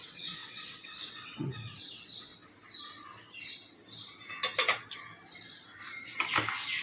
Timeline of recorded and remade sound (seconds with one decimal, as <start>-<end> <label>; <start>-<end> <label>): 0.0-2.3 remade; 2.3-6.8 recorded